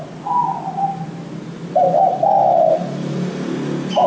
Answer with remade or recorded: recorded